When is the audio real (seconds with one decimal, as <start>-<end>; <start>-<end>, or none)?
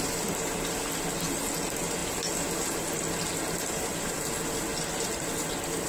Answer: 0.0-5.9